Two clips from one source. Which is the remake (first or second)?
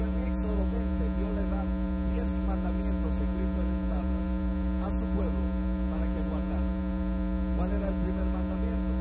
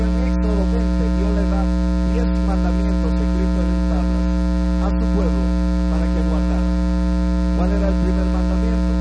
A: first